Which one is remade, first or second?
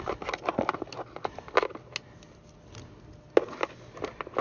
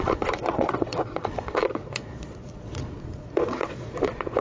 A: second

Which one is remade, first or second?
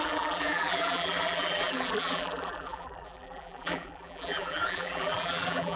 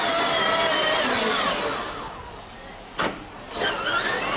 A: first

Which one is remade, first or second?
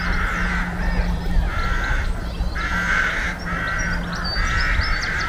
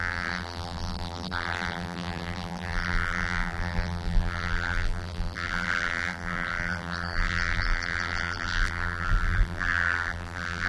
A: second